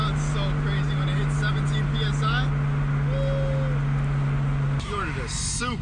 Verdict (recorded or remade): recorded